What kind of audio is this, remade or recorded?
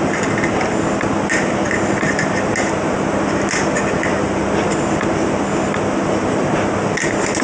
recorded